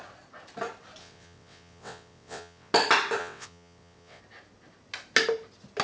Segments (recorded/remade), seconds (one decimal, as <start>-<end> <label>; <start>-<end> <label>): 0.0-1.0 recorded; 1.0-2.7 remade; 2.7-3.2 recorded; 3.2-4.2 remade; 4.2-5.8 recorded